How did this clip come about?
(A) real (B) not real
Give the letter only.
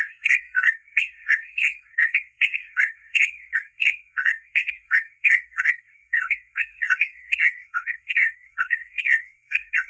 B